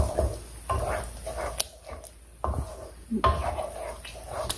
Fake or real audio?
real